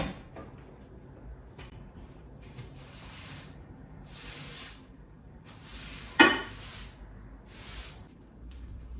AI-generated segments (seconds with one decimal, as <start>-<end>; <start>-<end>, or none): 0.0-0.4; 1.6-6.4; 8.0-9.0